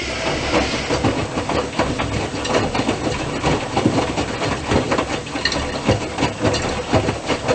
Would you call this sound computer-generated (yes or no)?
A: no